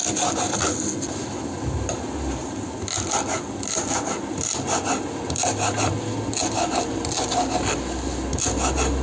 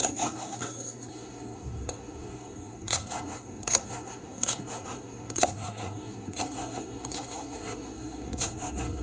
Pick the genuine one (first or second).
first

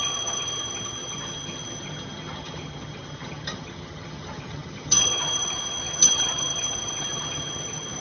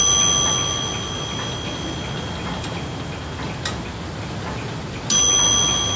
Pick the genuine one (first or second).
second